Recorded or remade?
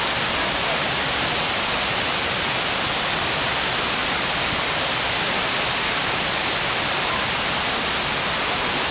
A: recorded